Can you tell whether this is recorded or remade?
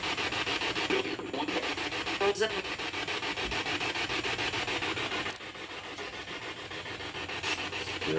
recorded